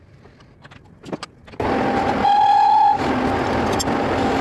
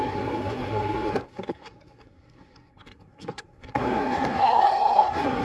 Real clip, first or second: first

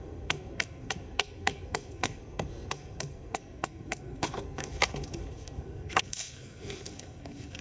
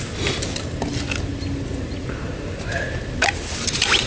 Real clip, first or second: second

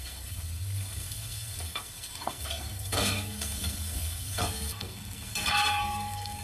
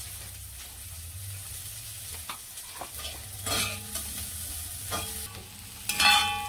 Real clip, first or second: second